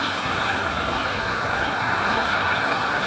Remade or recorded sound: remade